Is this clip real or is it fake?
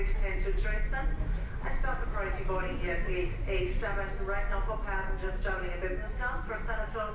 real